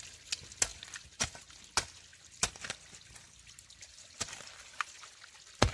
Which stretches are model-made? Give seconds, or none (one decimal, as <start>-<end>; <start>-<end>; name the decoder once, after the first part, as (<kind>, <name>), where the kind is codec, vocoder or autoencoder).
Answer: 0.7-1.3 (vocoder, BigVGAN v2); 2.1-5.3